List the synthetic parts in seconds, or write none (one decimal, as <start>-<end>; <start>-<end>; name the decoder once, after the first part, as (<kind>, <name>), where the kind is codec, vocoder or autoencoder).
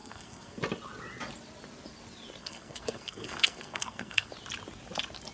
0.0-0.6 (codec, SNAC); 2.4-4.3